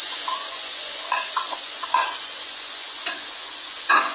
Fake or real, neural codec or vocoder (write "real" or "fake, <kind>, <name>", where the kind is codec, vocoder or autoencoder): fake, vocoder, Vocos